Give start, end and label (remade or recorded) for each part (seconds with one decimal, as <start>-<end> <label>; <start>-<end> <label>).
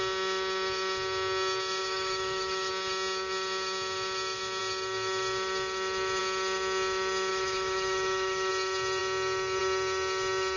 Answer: 0.0-1.8 recorded; 1.8-2.7 remade; 2.7-7.3 recorded; 7.3-8.5 remade; 8.5-10.6 recorded